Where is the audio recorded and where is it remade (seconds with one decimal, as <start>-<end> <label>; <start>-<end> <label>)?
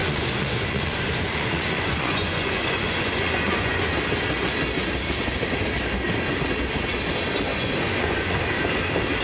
0.0-3.9 remade; 3.9-7.5 recorded; 7.5-8.4 remade; 8.4-9.2 recorded